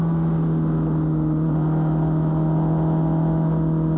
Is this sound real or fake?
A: real